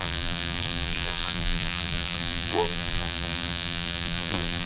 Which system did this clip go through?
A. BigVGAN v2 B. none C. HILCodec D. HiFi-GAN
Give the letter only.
A